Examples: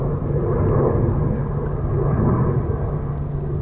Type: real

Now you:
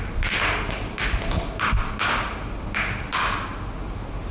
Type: real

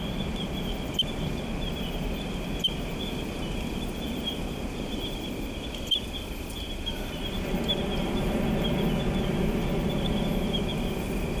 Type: real